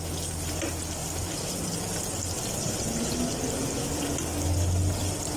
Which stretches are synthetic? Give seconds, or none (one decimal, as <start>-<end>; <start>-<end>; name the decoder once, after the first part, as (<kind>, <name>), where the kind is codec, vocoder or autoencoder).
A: none